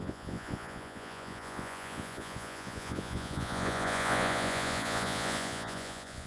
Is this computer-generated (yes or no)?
yes